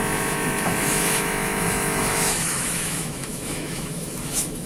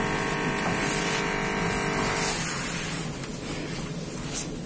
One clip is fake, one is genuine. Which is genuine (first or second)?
second